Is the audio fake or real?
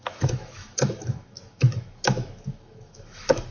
fake